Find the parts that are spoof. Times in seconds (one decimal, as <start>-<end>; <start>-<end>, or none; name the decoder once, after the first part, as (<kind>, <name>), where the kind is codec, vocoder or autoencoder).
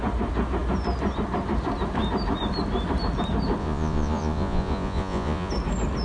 3.6-5.5 (vocoder, Vocos)